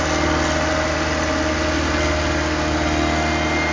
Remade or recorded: recorded